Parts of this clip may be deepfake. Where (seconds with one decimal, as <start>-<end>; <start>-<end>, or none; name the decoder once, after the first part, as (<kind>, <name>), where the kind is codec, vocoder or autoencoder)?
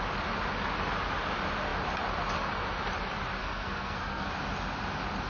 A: 3.4-4.3 (codec, SNAC)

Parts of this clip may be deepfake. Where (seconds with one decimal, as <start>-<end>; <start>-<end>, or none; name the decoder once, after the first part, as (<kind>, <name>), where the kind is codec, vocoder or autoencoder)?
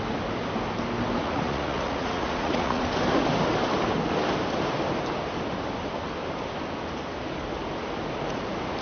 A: 1.2-2.8 (vocoder, Vocos)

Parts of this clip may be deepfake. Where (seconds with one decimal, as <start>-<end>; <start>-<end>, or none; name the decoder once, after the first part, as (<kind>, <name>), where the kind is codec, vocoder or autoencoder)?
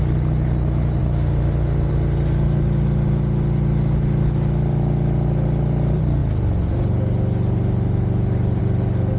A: none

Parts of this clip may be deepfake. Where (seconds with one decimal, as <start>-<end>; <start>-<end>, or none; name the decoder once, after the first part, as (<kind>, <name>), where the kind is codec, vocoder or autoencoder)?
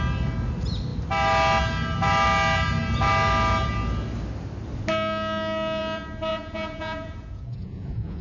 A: 6.3-8.2 (vocoder, Vocos)